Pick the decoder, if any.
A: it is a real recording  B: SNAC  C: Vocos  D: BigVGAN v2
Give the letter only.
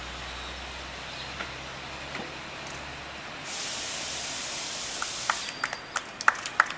A